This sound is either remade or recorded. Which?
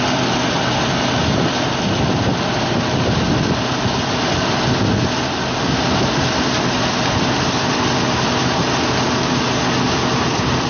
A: recorded